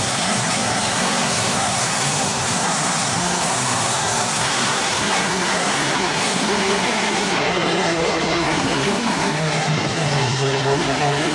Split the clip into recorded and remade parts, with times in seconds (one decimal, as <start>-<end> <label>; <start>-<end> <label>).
0.0-11.3 remade